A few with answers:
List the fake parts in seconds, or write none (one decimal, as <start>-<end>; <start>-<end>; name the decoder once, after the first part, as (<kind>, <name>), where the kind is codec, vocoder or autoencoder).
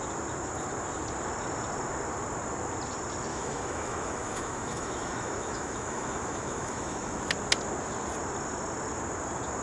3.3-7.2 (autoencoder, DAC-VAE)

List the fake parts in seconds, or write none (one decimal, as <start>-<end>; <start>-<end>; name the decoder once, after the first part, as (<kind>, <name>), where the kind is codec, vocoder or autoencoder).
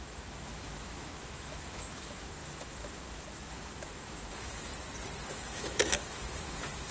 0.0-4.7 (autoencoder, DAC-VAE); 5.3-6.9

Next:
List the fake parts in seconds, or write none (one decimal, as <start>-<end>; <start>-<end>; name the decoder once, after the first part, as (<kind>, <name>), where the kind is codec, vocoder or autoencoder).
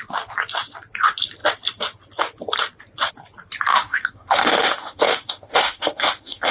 3.7-6.5 (autoencoder, DAC-VAE)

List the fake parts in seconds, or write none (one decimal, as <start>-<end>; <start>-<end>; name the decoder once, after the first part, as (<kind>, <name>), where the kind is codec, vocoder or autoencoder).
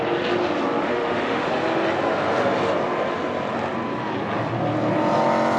0.8-1.5 (autoencoder, DAC-VAE)